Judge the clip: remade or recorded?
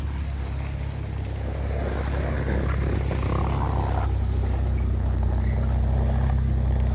recorded